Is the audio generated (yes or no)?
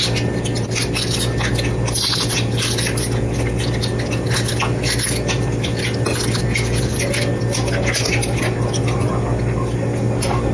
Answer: no